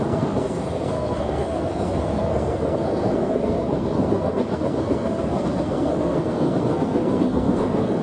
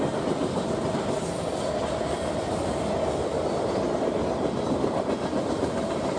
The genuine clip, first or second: second